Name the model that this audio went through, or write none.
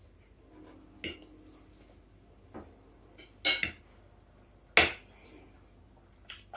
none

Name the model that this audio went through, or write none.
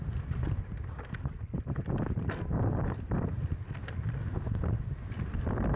none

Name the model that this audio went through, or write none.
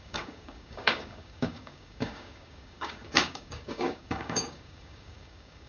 codec, DAC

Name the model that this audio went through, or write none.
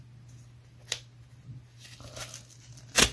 none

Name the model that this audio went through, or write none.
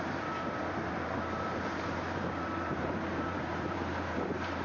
vocoder, BigVGAN v2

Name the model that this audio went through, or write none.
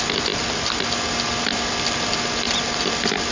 none